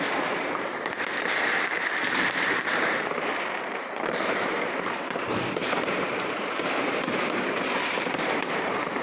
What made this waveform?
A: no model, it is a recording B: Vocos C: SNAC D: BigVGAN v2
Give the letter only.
D